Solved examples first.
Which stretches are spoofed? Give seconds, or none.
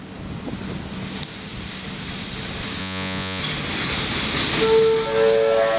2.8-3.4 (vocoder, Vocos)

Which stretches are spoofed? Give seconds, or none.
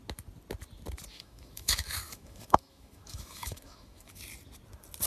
1.1-4.2 (autoencoder, DAC-VAE)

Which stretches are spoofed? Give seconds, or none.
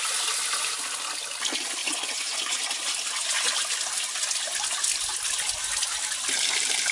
1.8-2.6 (vocoder, Vocos)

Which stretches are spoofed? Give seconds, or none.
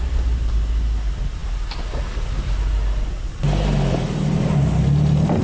none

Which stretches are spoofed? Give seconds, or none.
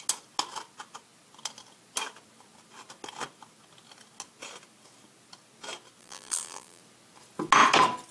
6.0-6.8 (vocoder, BigVGAN v2)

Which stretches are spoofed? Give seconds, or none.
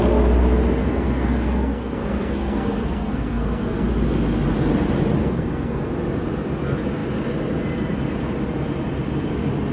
0.8-3.9 (codec, SNAC); 5.2-5.9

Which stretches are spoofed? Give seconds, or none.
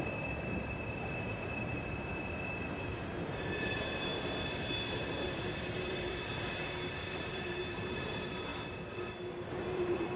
0.0-4.1 (vocoder, BigVGAN v2); 4.9-8.5; 9.5-10.2